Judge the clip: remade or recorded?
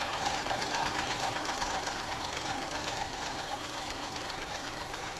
remade